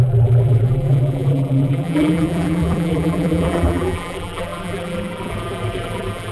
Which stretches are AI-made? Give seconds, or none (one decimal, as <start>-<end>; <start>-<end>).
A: 0.0-6.3